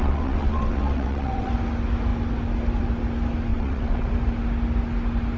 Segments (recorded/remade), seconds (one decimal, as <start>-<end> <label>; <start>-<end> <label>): 0.0-1.5 remade; 1.5-3.5 recorded; 3.5-4.1 remade; 4.1-5.4 recorded